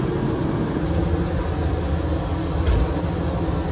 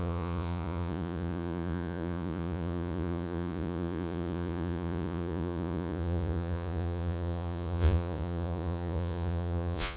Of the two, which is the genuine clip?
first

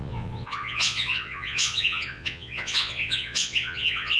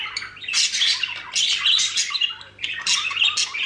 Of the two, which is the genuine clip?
second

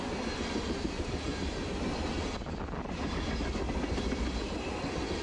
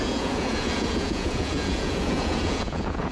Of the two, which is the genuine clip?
first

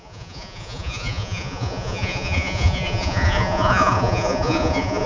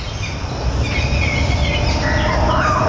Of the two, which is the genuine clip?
second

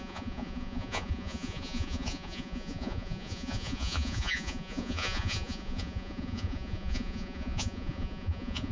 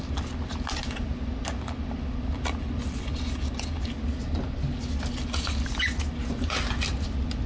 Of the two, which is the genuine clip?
second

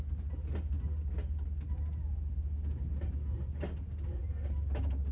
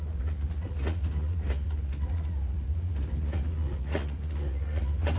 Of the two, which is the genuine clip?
first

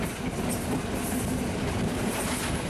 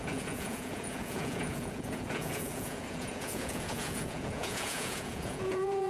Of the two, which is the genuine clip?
first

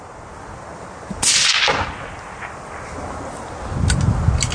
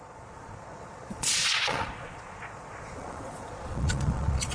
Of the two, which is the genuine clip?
first